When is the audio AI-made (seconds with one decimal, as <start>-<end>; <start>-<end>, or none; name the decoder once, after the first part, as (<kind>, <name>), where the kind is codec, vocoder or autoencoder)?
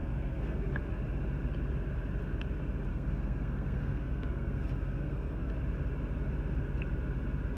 0.0-0.8 (codec, SNAC); 2.9-5.5